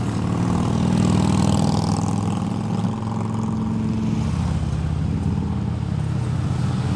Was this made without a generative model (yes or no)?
yes